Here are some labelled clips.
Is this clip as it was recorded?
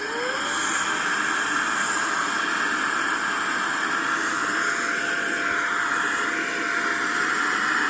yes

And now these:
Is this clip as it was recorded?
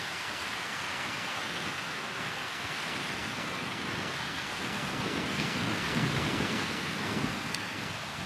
no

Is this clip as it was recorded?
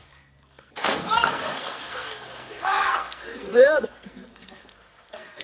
no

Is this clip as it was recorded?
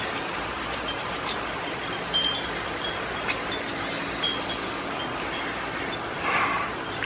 yes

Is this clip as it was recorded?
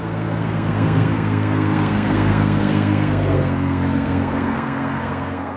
no